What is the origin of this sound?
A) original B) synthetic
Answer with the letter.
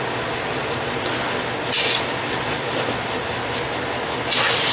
A